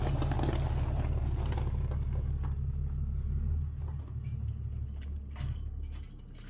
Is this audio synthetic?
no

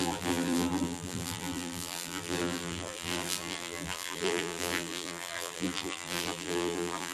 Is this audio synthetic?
yes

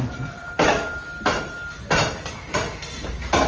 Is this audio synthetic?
no